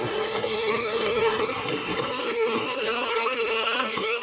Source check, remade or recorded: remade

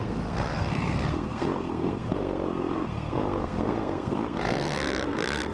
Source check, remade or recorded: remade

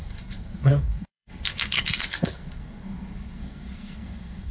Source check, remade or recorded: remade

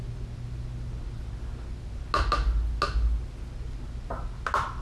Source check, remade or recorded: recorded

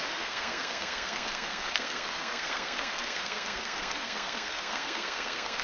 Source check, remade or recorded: remade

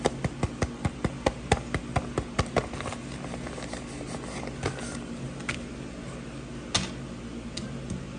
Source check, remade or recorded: recorded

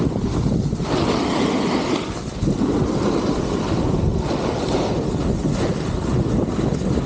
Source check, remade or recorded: recorded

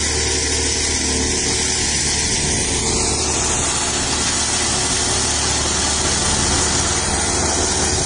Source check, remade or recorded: recorded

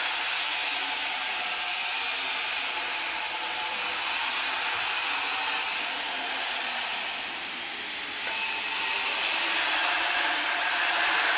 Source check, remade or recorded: recorded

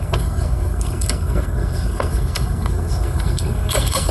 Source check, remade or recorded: remade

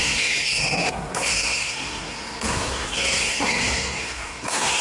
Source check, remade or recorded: remade